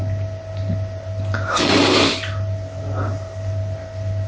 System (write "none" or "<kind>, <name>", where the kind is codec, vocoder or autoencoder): none